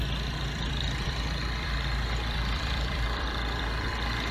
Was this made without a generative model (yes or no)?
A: no